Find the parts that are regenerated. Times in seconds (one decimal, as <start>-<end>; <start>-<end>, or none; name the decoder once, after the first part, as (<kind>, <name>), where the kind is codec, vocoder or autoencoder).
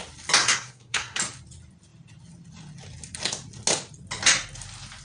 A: 0.4-1.2 (codec, SNAC)